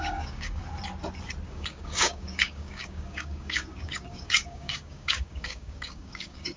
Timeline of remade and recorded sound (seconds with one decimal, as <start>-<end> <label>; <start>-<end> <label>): 0.0-0.6 remade; 0.6-1.5 recorded; 1.5-6.6 remade